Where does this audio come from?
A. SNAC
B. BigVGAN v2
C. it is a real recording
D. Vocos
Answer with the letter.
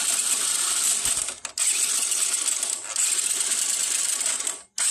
C